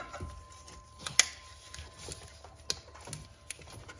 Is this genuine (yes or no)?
yes